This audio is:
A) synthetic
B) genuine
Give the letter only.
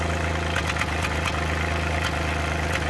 B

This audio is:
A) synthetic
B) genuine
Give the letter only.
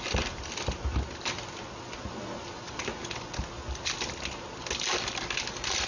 B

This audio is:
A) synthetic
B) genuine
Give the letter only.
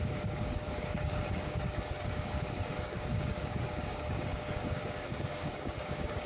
A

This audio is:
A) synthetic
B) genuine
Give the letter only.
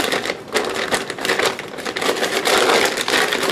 B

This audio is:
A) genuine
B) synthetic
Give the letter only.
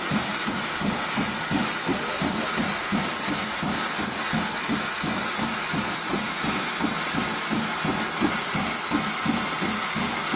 A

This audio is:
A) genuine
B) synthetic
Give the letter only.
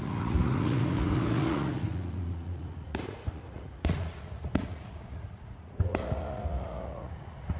B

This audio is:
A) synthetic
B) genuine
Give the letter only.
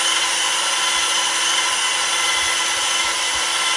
B